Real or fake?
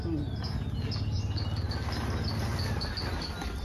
real